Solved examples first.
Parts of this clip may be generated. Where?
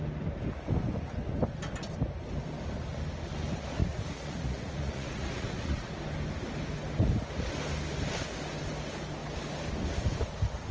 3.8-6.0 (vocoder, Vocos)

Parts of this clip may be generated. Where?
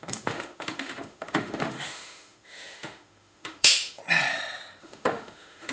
0.0-4.0 (autoencoder, DAC-VAE); 4.8-5.7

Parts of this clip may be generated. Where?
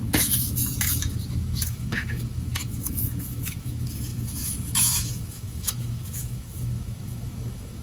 0.0-7.8 (autoencoder, DAC-VAE)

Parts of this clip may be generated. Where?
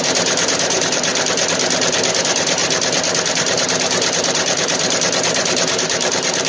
0.0-1.1 (vocoder, BigVGAN v2); 2.2-2.6; 3.3-6.5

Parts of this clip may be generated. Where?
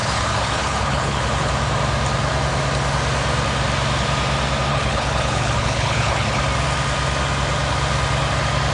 0.0-1.5 (codec, HILCodec); 4.7-6.4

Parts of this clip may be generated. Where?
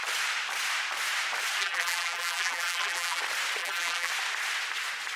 1.6-3.2 (vocoder, BigVGAN v2); 3.6-4.1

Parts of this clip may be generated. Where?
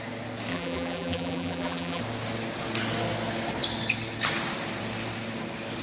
0.5-2.0 (vocoder, BigVGAN v2)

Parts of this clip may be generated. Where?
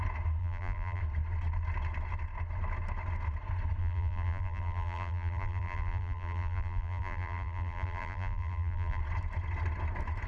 0.4-1.0 (vocoder, BigVGAN v2); 3.8-9.0